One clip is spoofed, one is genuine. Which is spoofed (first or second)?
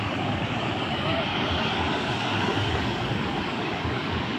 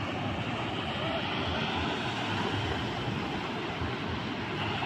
first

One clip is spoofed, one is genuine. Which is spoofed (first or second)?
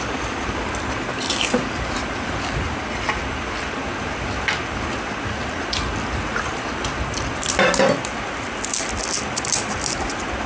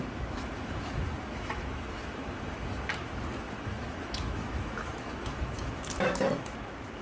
second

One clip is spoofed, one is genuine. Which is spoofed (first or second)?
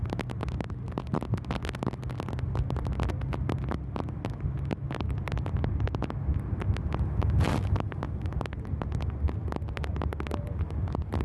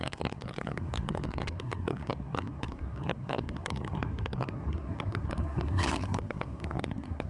second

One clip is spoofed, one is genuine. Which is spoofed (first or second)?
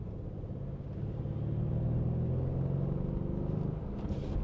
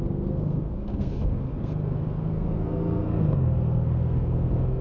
second